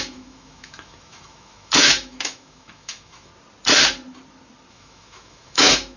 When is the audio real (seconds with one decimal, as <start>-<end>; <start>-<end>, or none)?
3.3-4.7